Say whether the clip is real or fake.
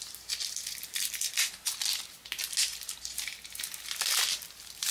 real